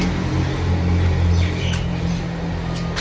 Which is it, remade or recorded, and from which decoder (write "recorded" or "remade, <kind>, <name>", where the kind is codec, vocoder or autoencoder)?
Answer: recorded